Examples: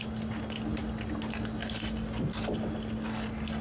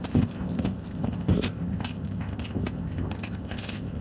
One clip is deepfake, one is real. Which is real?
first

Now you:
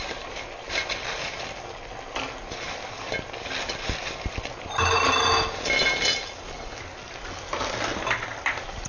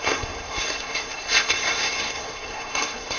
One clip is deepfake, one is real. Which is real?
first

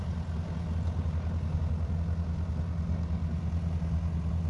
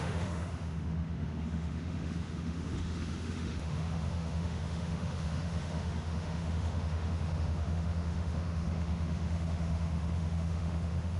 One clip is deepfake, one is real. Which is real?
first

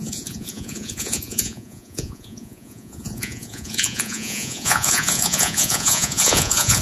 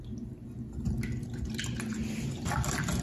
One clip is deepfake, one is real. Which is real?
second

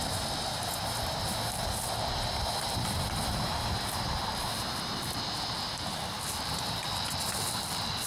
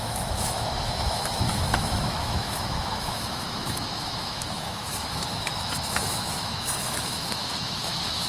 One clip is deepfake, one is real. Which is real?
first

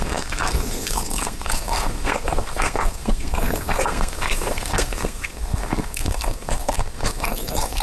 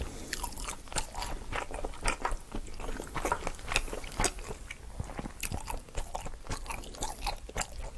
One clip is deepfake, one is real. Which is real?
second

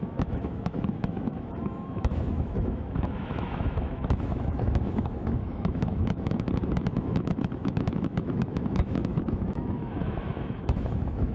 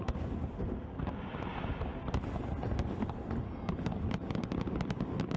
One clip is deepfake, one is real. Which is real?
second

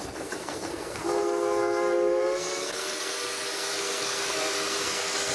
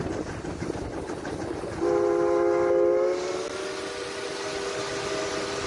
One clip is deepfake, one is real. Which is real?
second